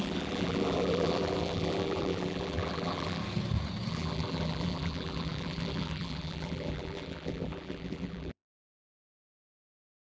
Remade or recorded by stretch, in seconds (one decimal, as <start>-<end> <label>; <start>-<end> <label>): 0.0-3.2 remade; 3.2-3.9 recorded; 3.9-10.2 remade